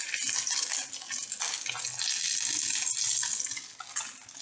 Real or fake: real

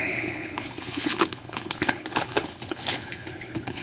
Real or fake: fake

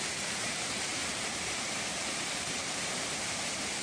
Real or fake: fake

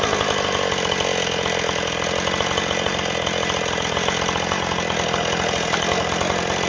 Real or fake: real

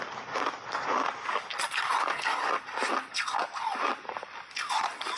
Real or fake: real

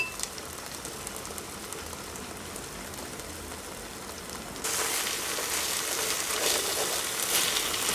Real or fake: real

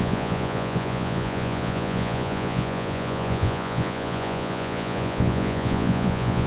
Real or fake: fake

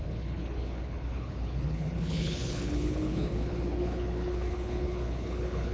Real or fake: fake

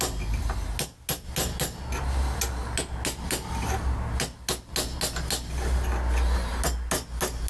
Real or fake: real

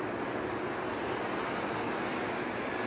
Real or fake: real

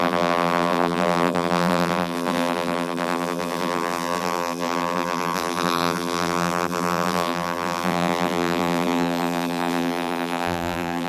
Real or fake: fake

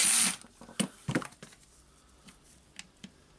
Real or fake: real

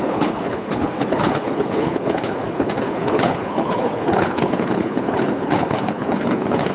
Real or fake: fake